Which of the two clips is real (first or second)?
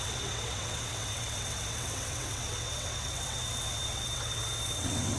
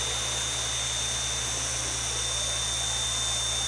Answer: second